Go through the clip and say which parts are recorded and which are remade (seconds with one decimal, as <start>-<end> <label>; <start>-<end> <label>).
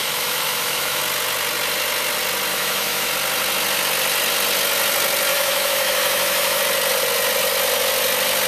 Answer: 0.0-1.0 remade; 1.0-2.5 recorded; 2.5-3.1 remade; 3.1-5.3 recorded; 5.3-6.6 remade; 6.6-8.5 recorded